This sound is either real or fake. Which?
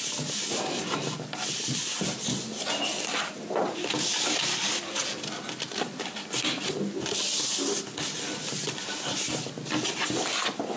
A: real